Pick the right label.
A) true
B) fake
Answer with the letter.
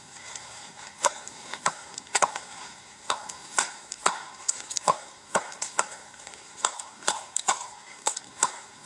B